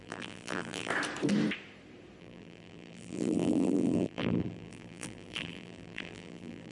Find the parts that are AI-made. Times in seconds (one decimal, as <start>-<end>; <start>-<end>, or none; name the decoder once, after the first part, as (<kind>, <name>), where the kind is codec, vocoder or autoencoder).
0.0-0.9 (vocoder, BigVGAN v2); 2.2-6.7